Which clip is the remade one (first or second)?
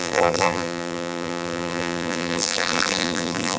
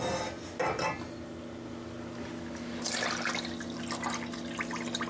first